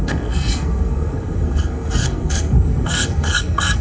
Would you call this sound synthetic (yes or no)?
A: yes